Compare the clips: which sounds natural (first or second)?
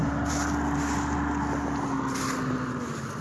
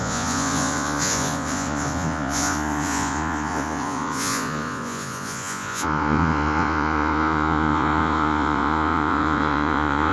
first